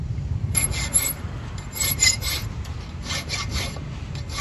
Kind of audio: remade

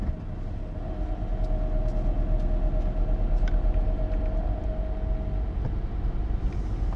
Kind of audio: recorded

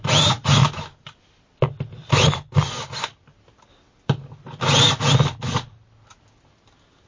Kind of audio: recorded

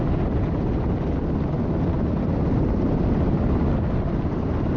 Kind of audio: recorded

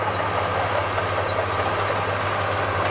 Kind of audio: recorded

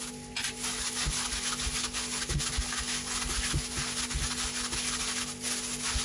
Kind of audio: recorded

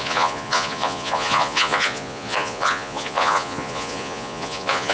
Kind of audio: remade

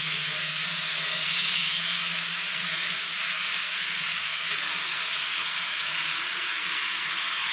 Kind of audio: remade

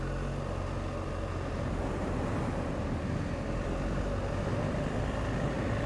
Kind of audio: recorded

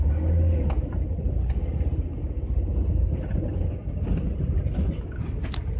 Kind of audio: recorded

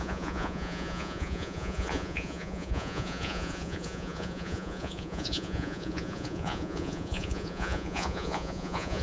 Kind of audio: remade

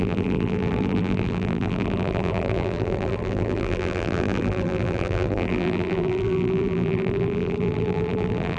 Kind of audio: remade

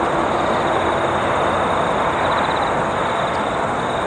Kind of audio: recorded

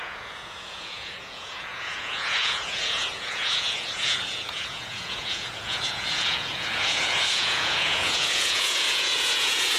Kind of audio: remade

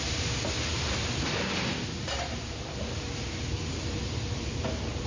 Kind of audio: recorded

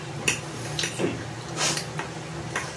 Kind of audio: recorded